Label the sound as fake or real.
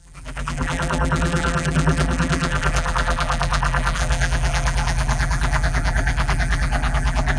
fake